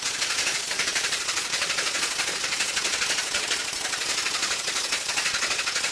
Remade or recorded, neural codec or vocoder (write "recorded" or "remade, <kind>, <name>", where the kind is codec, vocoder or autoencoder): remade, vocoder, Vocos